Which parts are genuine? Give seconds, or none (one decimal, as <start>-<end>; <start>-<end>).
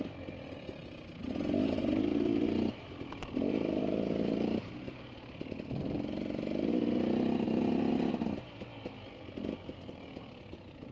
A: 0.0-10.9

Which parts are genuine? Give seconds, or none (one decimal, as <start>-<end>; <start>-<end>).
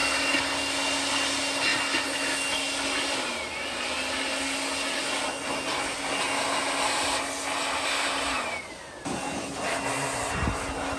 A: 0.0-11.0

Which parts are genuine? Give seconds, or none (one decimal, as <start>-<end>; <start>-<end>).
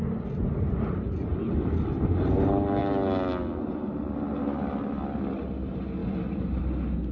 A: 0.0-7.1